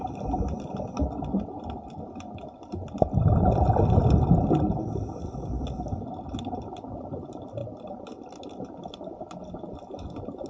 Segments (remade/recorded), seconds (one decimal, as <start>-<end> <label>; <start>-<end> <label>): 0.0-7.6 recorded; 7.6-8.4 remade; 8.4-10.5 recorded

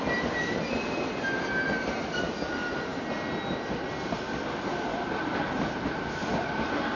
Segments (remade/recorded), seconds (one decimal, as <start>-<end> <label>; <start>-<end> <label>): 0.0-7.0 recorded

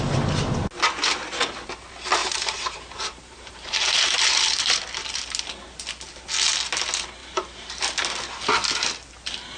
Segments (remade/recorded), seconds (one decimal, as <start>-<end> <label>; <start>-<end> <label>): 0.0-2.2 recorded; 2.2-4.8 remade; 4.8-7.2 recorded; 7.2-7.8 remade; 7.8-9.6 recorded

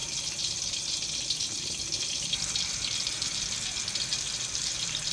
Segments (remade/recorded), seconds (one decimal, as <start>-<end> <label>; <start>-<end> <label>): 0.0-2.0 recorded; 2.0-5.1 remade

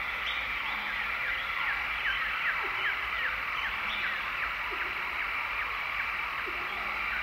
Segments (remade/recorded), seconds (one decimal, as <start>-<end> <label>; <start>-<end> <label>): 0.0-3.0 recorded; 3.0-3.9 remade; 3.9-7.2 recorded

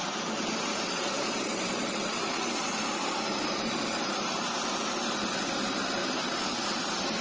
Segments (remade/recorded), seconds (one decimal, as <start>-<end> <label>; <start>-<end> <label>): 0.0-4.3 remade; 4.3-6.0 recorded; 6.0-6.5 remade; 6.5-7.2 recorded

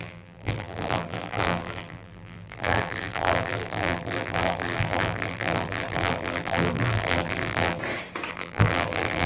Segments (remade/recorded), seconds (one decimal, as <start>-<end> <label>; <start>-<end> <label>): 0.0-7.8 remade; 7.8-8.3 recorded; 8.3-9.3 remade

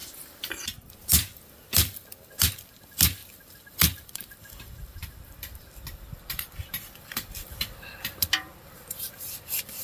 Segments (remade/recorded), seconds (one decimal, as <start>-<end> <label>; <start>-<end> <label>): 0.0-2.5 recorded; 2.5-9.8 remade